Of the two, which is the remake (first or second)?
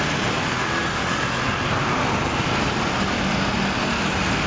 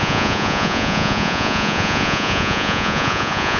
second